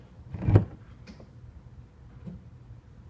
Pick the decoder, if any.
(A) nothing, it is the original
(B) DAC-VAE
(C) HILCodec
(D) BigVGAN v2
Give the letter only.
D